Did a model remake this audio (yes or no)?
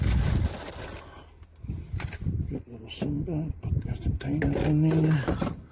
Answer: no